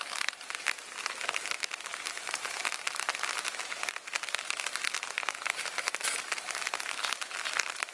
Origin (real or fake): real